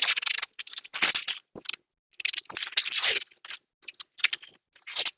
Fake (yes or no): no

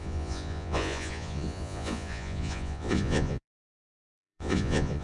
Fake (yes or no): yes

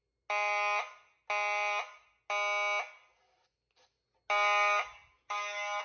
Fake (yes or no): no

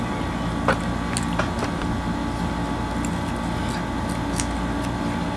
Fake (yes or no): no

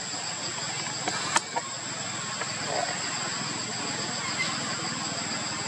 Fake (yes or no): no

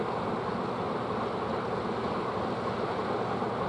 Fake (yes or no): no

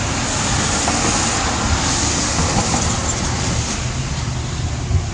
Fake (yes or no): no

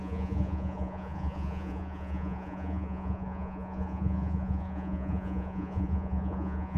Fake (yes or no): yes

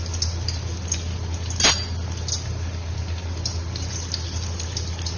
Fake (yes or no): no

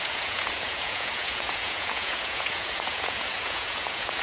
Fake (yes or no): yes